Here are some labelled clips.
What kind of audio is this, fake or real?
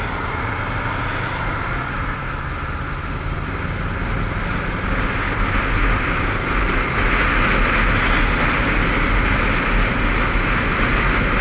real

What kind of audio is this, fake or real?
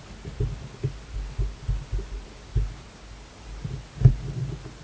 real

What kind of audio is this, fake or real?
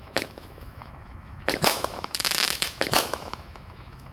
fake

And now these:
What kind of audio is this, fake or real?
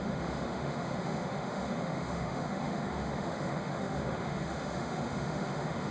fake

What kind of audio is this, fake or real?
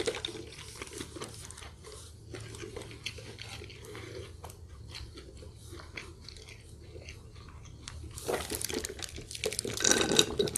real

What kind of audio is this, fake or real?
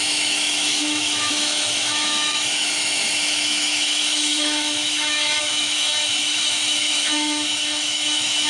fake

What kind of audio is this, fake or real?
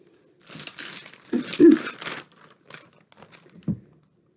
real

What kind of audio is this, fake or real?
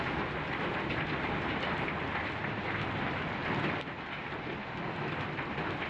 real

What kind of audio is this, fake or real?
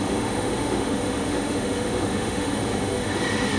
fake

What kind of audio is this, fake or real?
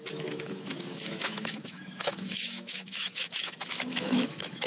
fake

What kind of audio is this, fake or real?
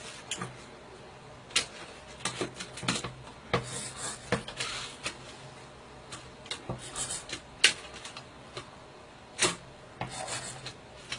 real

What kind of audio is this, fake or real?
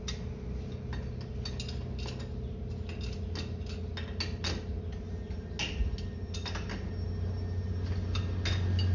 real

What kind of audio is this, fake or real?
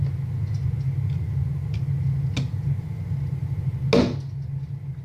real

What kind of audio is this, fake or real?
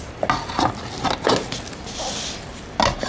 real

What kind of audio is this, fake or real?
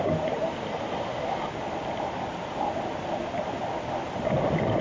real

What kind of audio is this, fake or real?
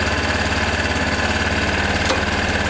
real